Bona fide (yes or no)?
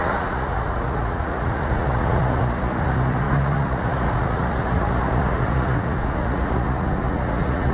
no